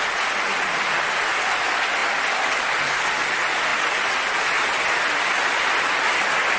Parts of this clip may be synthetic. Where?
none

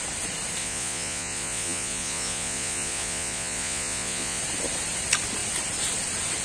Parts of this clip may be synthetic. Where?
0.6-4.4 (vocoder, Vocos)